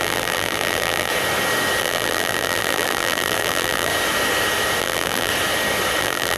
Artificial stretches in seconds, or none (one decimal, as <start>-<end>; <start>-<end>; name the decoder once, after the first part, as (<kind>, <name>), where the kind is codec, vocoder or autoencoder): 0.0-1.1 (vocoder, BigVGAN v2); 1.8-3.9; 4.8-5.3; 6.0-6.4